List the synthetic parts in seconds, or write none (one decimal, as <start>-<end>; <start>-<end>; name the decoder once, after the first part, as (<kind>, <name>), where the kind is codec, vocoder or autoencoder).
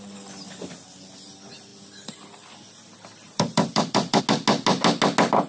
1.7-4.2 (vocoder, BigVGAN v2)